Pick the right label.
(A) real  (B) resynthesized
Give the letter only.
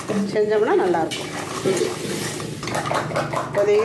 A